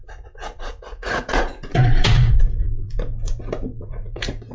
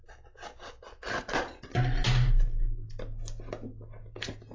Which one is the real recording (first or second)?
second